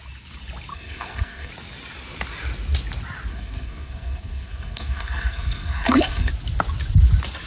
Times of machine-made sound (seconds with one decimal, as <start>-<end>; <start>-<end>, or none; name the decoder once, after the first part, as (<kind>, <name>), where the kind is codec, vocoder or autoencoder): 0.7-1.5 (codec, SNAC); 3.3-6.3

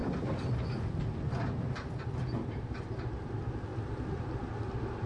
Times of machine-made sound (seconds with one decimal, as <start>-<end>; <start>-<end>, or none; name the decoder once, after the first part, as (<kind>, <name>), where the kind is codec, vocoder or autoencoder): none

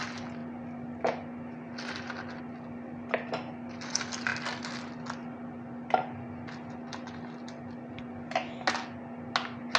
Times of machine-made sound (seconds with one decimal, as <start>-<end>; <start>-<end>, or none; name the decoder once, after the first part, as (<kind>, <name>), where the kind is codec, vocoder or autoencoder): none

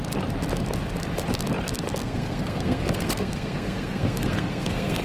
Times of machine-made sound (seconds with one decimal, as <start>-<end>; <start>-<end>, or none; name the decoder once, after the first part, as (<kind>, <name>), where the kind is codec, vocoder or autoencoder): 2.0-5.0 (codec, SNAC)

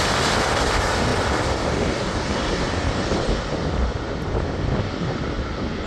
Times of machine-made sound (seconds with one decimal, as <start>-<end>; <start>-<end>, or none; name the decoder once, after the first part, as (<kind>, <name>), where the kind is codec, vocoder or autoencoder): none

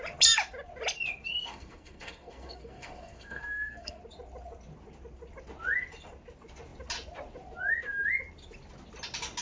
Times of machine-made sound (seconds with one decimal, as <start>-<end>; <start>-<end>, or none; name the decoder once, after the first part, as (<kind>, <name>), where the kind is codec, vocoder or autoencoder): 1.3-4.0 (codec, SNAC)

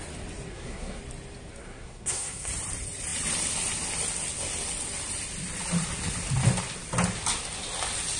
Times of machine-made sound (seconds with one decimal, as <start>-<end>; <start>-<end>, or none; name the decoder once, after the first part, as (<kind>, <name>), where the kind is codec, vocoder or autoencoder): 0.5-1.0 (codec, SNAC); 1.6-2.5